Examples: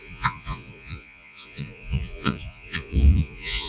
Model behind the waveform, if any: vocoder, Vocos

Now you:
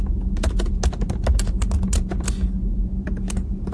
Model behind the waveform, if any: none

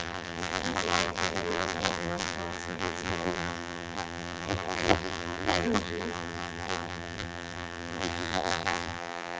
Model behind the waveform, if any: vocoder, BigVGAN v2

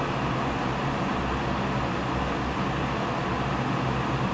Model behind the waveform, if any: none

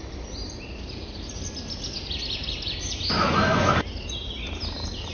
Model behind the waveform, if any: none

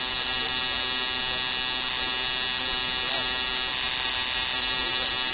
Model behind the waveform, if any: none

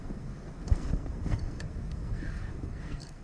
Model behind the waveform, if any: codec, SNAC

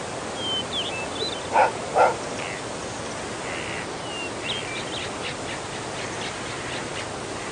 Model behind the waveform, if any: none